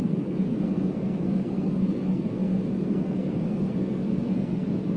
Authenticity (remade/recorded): remade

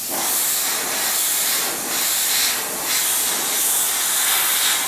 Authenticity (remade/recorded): recorded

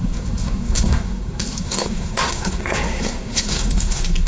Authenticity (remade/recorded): remade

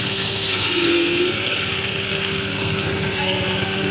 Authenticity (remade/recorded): remade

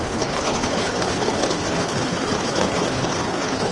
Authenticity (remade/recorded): remade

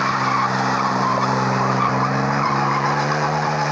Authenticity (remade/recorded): remade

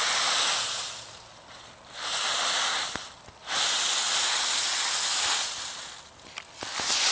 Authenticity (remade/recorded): recorded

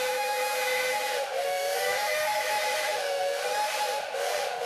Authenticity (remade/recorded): remade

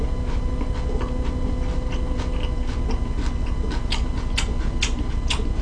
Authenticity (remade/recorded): recorded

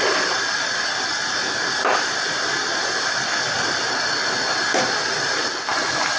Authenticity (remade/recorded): recorded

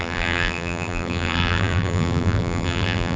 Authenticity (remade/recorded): remade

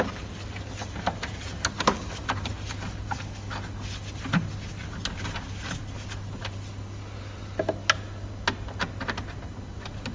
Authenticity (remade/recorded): recorded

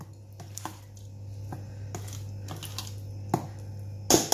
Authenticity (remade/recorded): recorded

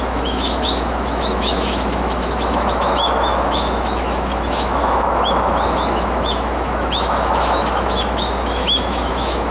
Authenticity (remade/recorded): remade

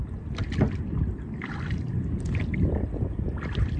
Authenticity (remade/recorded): recorded